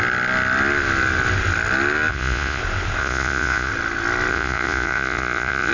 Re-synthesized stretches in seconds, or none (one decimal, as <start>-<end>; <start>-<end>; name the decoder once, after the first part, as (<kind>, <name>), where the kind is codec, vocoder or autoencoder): 2.1-2.6 (vocoder, Vocos); 3.0-3.7; 4.3-5.7